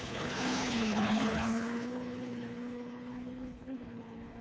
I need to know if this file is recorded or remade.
remade